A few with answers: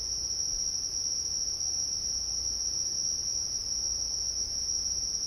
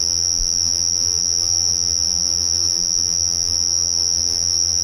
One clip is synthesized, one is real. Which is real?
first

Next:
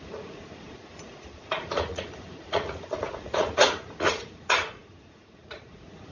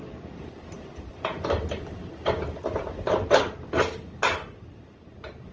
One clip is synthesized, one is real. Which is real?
second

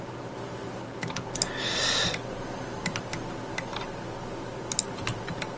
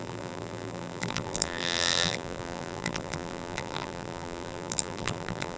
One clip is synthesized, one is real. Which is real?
first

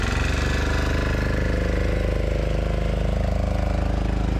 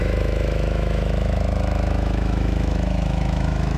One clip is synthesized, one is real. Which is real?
first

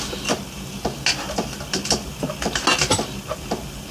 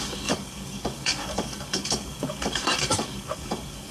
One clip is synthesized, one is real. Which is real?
first